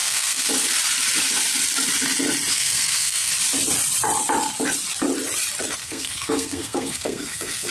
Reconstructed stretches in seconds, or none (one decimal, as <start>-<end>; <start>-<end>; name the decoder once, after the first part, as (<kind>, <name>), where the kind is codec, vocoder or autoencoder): 0.0-0.5 (codec, SNAC); 2.5-3.3; 5.8-7.7